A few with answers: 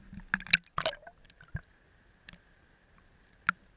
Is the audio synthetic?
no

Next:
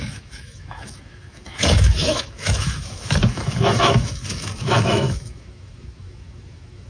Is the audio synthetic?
yes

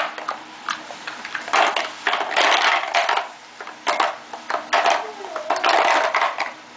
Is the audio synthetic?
no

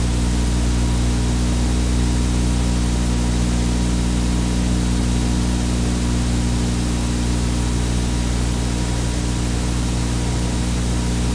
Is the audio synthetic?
no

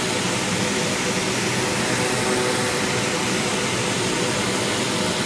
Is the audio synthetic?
no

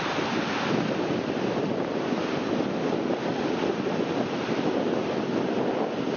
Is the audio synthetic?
no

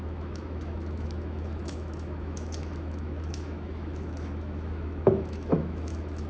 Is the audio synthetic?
yes